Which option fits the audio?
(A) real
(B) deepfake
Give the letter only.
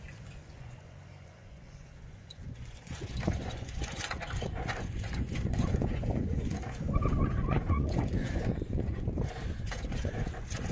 B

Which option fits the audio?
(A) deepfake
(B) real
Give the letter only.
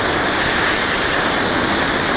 B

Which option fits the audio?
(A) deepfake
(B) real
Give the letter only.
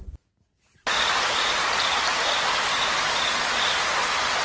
B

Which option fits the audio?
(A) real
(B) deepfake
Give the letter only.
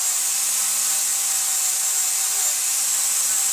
A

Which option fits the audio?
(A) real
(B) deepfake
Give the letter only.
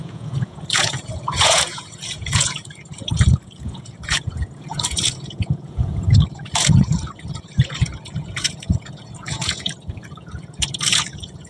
B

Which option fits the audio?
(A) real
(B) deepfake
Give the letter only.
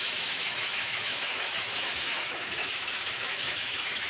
B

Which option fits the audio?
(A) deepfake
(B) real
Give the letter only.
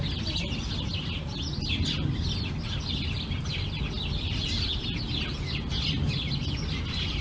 B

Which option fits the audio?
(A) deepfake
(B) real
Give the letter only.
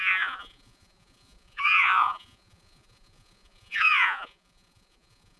A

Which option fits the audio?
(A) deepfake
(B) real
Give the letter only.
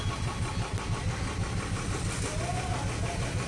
B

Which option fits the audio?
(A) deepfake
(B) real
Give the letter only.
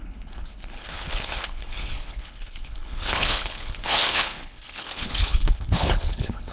A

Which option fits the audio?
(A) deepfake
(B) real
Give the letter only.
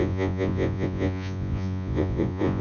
A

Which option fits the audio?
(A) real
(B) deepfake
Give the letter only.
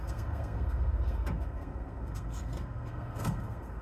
B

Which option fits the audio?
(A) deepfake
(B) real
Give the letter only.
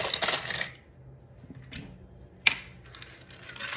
B